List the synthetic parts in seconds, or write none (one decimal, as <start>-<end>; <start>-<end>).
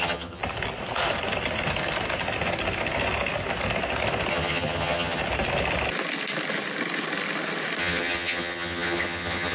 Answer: 0.0-0.4; 4.3-5.2; 7.8-9.5